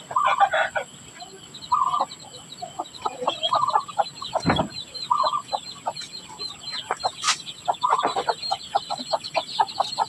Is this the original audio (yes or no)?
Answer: yes